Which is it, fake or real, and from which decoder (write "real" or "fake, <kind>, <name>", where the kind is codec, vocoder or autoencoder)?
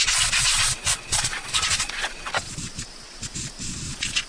fake, vocoder, Vocos